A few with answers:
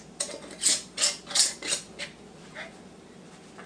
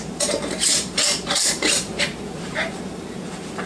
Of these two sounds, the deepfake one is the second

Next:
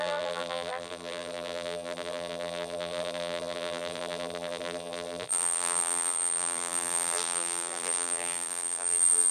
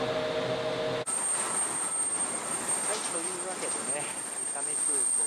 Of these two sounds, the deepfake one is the first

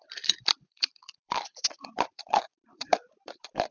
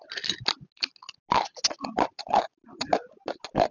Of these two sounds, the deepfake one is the first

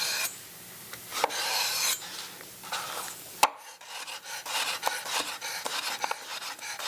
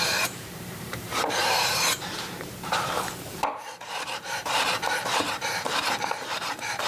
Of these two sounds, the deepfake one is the second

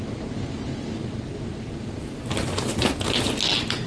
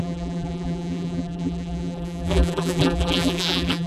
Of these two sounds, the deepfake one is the second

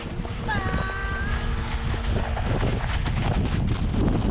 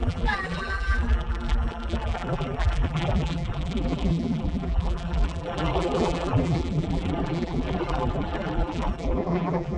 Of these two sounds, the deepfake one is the second